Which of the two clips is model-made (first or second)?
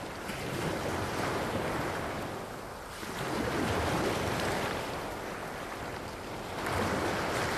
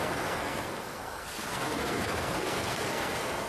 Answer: second